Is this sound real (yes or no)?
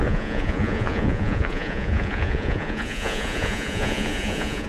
no